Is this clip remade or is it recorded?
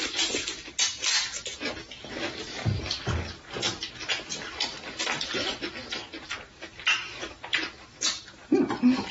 recorded